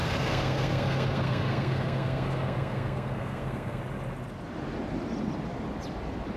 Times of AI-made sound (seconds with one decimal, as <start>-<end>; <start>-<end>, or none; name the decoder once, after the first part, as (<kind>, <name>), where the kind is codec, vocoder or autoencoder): 0.0-3.8 (codec, SNAC)

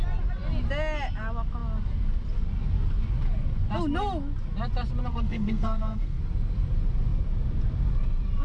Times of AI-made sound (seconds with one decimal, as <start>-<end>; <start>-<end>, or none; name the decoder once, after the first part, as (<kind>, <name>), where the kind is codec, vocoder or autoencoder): 5.1-6.2 (codec, SNAC)

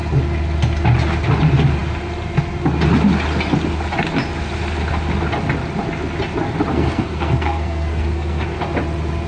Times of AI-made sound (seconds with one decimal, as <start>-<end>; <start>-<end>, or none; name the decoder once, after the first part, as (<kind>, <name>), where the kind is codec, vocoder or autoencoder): 6.7-8.6 (codec, SNAC)